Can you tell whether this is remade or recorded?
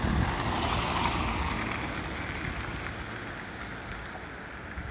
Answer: recorded